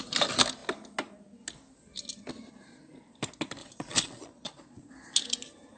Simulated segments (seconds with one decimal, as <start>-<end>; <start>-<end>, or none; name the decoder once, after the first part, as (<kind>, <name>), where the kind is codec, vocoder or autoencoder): 3.6-4.9 (vocoder, Vocos)